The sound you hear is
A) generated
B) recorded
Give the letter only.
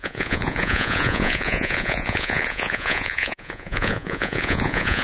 A